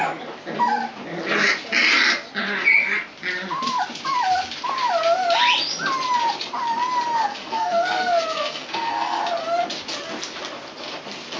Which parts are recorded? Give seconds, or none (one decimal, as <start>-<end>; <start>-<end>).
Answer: 0.0-7.3; 9.2-11.4